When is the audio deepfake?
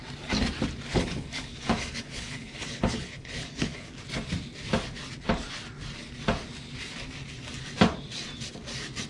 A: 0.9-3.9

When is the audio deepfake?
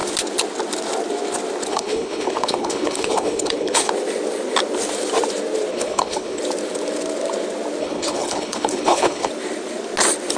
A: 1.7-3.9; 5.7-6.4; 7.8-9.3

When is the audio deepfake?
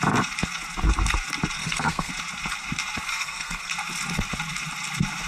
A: 1.6-2.1; 3.1-3.7